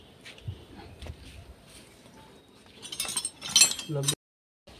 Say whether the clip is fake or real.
real